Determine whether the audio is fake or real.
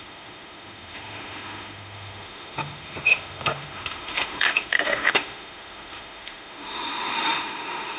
fake